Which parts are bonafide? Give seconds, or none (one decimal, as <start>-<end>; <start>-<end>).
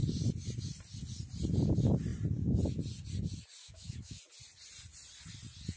0.0-3.6; 4.2-5.8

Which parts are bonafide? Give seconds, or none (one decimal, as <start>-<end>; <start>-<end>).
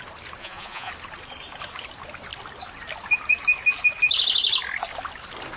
0.0-0.4; 0.9-5.6